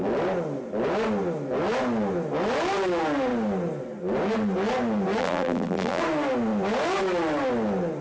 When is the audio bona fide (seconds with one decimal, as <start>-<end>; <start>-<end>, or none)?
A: 0.0-5.2; 6.0-8.0